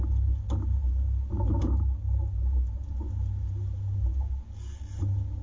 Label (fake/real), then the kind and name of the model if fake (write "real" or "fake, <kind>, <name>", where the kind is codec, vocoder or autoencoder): real